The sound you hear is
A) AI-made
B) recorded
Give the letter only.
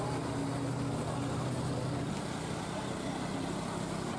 B